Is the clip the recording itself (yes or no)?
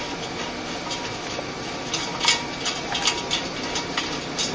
yes